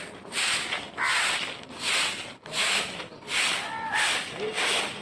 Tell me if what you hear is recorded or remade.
recorded